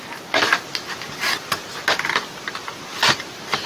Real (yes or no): yes